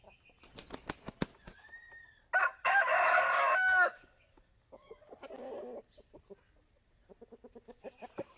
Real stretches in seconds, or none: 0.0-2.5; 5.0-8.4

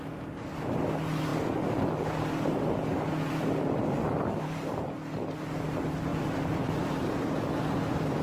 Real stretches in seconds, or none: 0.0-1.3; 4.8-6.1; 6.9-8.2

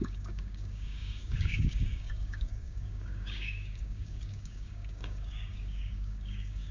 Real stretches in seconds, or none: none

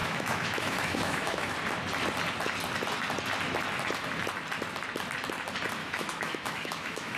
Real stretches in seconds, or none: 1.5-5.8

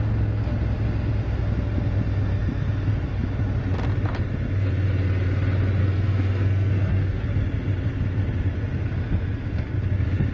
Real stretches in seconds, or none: 0.0-5.8; 7.3-10.3

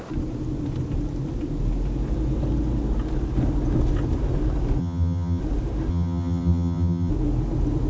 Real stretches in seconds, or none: 0.0-4.8; 5.4-5.9; 7.1-7.9